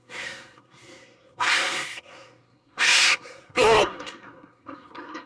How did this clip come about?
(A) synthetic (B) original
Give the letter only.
A